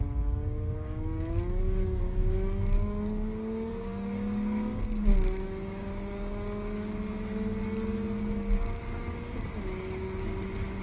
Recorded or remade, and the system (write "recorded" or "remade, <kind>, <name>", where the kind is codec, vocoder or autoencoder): remade, codec, DAC